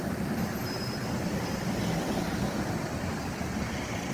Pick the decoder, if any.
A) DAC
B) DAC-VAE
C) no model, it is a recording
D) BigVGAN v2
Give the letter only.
C